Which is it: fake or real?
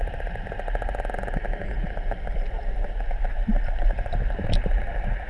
real